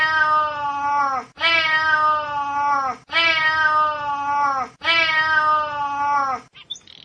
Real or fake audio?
real